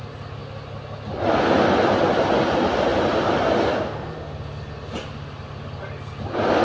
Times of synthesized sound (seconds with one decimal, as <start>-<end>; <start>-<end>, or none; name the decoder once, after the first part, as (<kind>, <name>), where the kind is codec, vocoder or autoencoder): none